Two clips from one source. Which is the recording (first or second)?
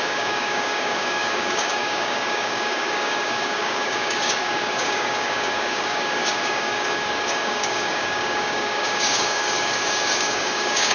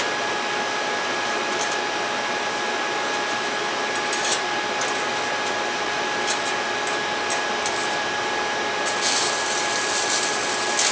second